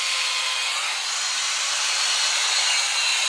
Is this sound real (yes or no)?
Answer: no